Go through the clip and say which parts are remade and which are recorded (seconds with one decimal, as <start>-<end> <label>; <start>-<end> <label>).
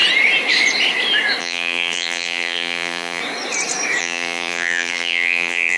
0.0-1.4 recorded; 1.4-3.2 remade; 3.2-4.0 recorded; 4.0-5.8 remade